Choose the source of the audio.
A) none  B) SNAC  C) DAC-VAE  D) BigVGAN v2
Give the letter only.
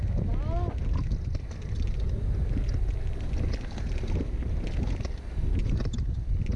A